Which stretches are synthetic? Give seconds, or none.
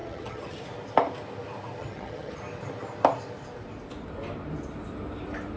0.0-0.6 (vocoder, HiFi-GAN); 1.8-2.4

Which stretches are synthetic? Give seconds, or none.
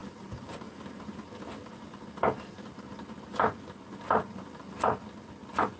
none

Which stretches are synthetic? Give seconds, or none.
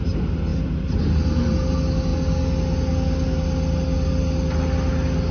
none